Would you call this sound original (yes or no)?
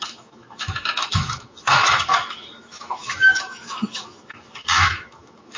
no